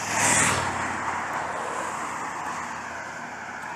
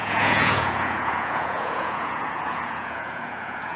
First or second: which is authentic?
first